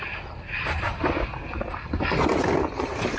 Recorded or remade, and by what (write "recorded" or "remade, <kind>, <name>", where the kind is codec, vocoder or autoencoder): recorded